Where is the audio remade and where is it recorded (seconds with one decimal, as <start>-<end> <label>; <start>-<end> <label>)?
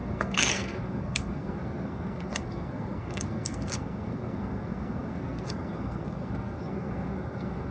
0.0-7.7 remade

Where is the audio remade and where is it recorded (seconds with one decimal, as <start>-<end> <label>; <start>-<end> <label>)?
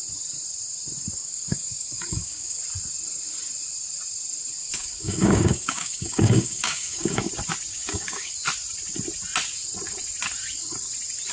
0.0-1.2 recorded; 1.2-2.6 remade; 2.6-4.6 recorded; 4.6-7.3 remade; 7.3-7.7 recorded; 7.7-8.3 remade; 8.3-11.3 recorded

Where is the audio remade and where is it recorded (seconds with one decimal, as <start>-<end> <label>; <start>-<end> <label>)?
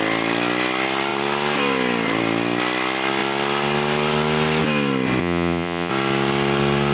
0.0-5.2 recorded; 5.2-5.9 remade; 5.9-6.9 recorded